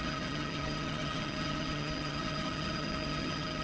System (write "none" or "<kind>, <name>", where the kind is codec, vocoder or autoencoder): vocoder, HiFi-GAN